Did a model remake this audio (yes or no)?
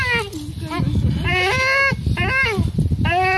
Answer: no